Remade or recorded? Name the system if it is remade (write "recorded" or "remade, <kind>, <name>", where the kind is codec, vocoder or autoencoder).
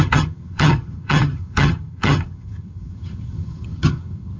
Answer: remade, vocoder, HiFi-GAN